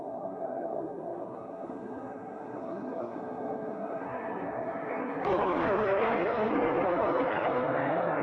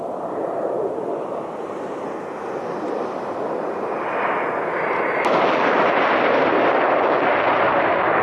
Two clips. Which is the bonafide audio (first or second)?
second